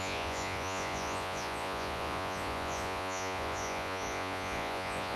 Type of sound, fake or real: fake